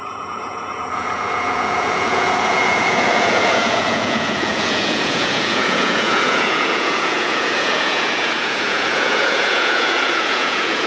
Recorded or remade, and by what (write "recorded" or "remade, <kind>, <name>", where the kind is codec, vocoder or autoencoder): remade, vocoder, Vocos